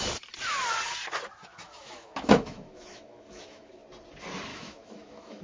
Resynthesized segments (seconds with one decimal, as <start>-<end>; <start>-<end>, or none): 1.5-3.7; 4.5-5.4